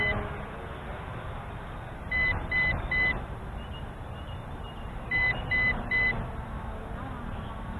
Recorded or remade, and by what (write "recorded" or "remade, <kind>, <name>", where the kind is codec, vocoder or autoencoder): recorded